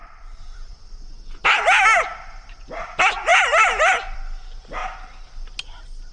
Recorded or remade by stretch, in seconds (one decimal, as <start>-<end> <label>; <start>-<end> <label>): 0.0-1.0 remade; 1.0-3.3 recorded; 3.3-4.2 remade; 4.2-4.8 recorded; 4.8-5.3 remade; 5.3-6.1 recorded